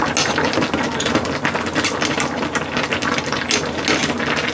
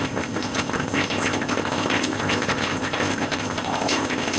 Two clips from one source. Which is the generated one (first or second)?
second